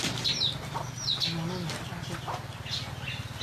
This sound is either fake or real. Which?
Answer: fake